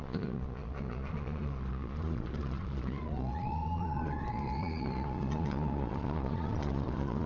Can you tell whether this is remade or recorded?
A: remade